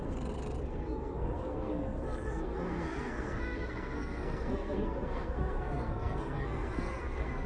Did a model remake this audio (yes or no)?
yes